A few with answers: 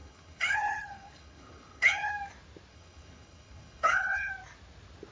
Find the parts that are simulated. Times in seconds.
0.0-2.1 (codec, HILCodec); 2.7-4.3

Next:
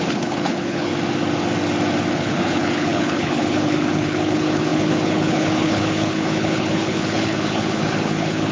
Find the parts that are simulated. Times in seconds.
0.0-0.9 (codec, HILCodec); 2.1-8.5

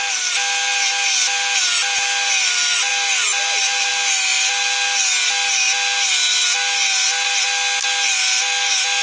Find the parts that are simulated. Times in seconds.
none

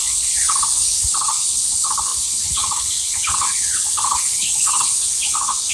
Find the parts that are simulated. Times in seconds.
0.0-5.7 (codec, HILCodec)

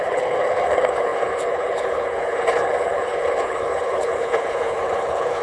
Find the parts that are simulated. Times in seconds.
0.0-5.4 (codec, HILCodec)

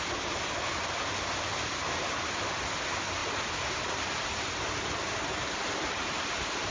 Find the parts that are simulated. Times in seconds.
none